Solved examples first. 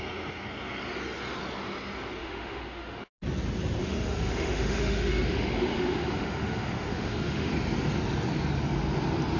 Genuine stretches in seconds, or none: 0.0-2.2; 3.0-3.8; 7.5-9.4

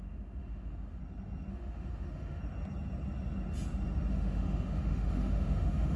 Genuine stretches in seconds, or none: 1.0-1.5; 2.4-4.1

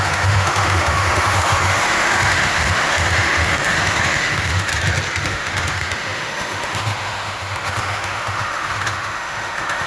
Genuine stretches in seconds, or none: 4.7-5.3

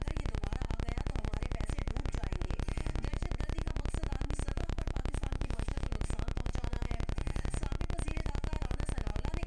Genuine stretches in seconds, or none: 0.0-4.6; 5.8-9.5

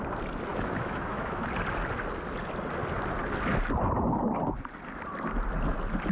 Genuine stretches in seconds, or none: 0.0-0.5; 1.4-6.1

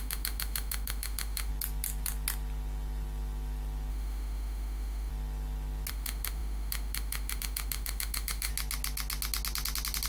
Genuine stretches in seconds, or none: 1.5-3.9; 5.1-5.9; 8.5-10.1

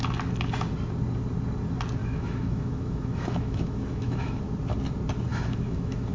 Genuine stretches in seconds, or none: 0.0-2.0; 4.4-5.3